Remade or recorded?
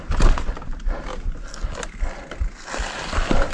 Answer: recorded